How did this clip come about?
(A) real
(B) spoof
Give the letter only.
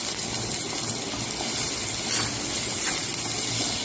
A